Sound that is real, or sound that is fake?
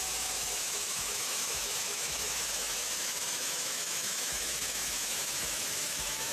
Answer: fake